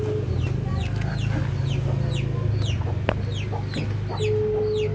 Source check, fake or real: real